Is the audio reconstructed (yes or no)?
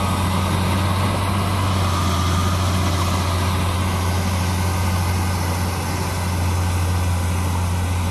no